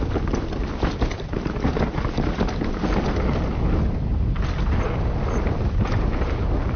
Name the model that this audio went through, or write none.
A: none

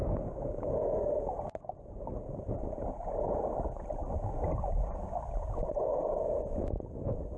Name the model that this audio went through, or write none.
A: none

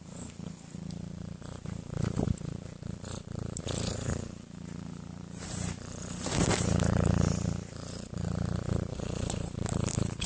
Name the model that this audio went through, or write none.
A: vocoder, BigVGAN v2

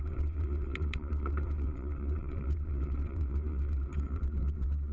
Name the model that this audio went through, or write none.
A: vocoder, WaveNeXt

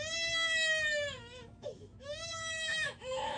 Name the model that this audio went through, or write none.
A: autoencoder, DAC-VAE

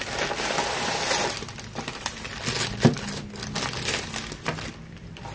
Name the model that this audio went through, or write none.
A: none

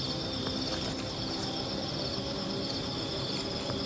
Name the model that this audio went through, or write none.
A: none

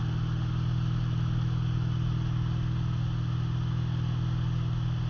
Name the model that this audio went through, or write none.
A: none